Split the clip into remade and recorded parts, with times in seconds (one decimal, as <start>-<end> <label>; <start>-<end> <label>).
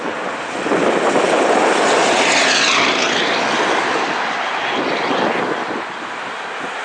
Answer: 0.0-6.8 recorded